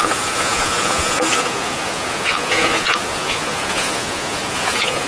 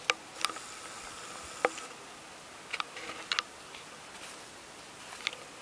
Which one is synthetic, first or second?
first